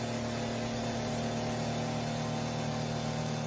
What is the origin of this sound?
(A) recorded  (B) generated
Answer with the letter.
A